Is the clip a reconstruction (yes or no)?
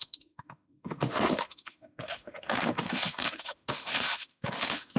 yes